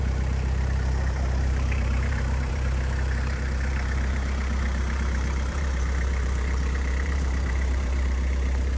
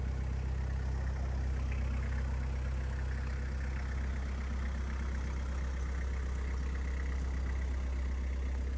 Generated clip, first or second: first